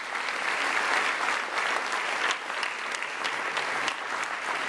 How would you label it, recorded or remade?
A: recorded